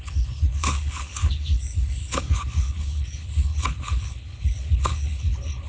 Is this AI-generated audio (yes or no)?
yes